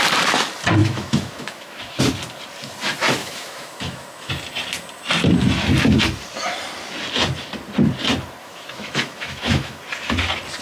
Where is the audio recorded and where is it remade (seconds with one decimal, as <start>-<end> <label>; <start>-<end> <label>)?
0.0-0.8 recorded; 0.8-2.0 remade; 2.0-3.2 recorded; 3.2-4.3 remade; 4.3-8.4 recorded; 8.4-9.8 remade; 9.8-10.6 recorded